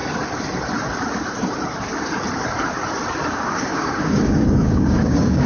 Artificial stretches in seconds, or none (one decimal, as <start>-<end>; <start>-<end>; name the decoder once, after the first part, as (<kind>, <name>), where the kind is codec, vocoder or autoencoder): 3.3-5.5 (codec, DAC)